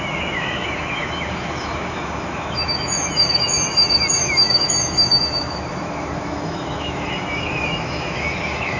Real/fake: fake